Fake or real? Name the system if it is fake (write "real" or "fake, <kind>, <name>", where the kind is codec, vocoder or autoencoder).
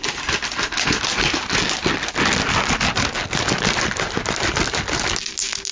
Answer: real